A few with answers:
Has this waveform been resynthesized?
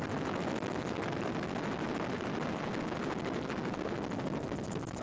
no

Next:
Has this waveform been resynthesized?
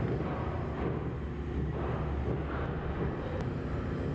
no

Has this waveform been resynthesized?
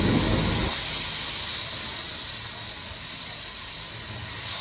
no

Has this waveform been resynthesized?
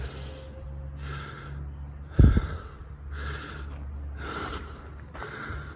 no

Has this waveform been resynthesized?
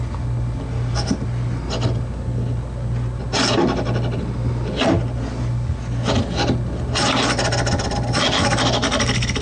no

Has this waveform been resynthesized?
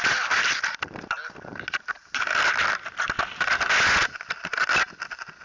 no